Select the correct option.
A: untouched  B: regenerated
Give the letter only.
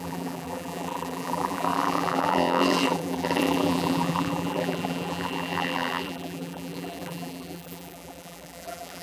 B